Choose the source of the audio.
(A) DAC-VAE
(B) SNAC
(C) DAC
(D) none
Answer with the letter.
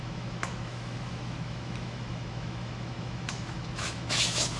A